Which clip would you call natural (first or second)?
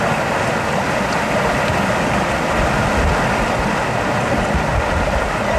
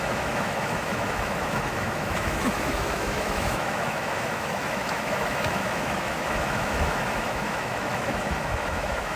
first